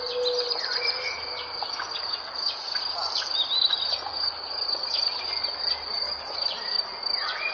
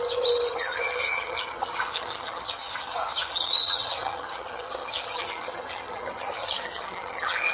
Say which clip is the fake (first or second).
second